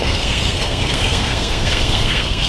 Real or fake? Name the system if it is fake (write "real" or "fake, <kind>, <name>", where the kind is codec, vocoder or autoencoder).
fake, codec, SNAC